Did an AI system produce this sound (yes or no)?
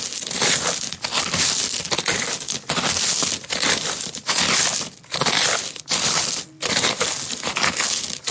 no